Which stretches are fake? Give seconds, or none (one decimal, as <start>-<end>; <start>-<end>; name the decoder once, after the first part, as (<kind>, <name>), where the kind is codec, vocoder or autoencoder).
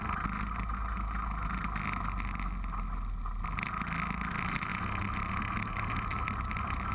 none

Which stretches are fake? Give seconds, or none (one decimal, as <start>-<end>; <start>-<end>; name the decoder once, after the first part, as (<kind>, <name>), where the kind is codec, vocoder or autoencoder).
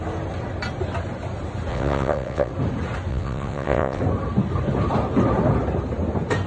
1.7-2.5 (vocoder, WaveNeXt); 3.1-4.0